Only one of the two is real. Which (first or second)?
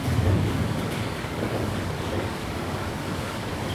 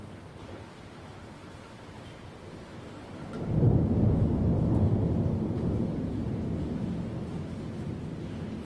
second